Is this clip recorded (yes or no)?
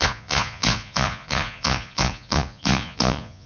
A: no